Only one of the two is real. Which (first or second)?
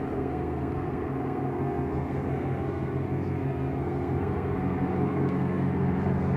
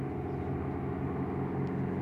second